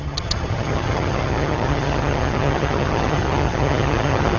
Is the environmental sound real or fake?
fake